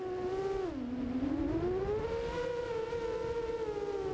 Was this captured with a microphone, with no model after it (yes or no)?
yes